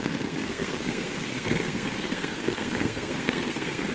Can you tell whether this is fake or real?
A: fake